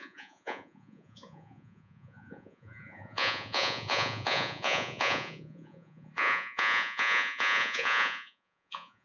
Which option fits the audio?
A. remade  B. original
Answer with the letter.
A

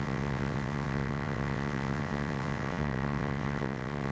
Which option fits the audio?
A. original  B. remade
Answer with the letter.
B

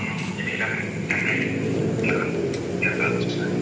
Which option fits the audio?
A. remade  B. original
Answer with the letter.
B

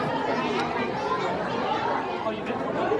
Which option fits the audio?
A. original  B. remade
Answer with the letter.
A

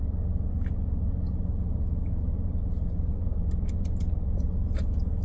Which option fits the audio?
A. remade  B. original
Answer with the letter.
B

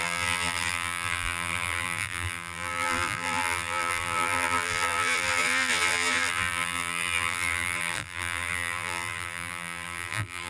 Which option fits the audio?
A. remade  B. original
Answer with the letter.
A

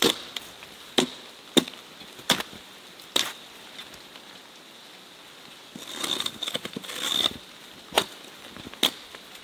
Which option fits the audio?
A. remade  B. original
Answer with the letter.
A